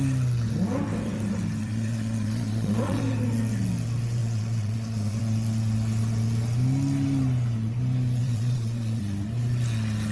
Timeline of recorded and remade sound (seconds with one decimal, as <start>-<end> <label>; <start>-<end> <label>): 0.0-1.6 recorded; 1.6-3.0 remade; 3.0-4.2 recorded; 4.2-5.2 remade; 5.2-8.2 recorded; 8.2-9.0 remade; 9.0-10.1 recorded